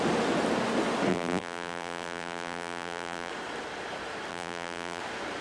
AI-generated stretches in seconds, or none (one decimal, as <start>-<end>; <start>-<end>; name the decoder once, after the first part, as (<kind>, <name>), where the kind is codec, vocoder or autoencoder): 1.1-3.3 (vocoder, BigVGAN v2); 4.3-5.0